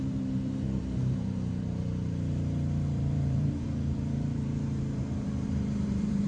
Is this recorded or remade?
remade